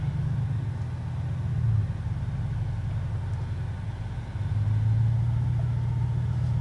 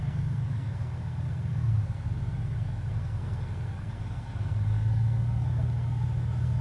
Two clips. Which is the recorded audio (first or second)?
first